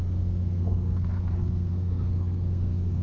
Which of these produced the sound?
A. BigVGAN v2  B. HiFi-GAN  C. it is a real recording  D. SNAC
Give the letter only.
D